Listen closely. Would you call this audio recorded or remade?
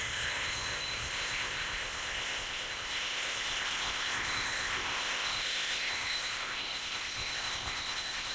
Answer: remade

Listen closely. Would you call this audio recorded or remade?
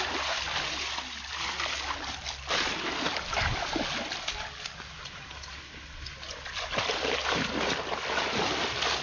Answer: recorded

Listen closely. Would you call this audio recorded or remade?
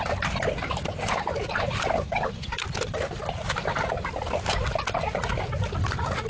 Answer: recorded